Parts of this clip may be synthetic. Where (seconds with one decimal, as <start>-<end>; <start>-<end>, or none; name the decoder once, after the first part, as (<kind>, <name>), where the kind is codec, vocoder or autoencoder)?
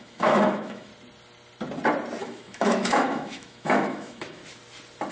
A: 0.0-0.9 (autoencoder, DAC-VAE); 2.2-4.4